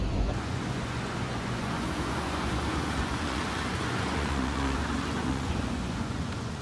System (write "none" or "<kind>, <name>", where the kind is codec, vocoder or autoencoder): vocoder, Vocos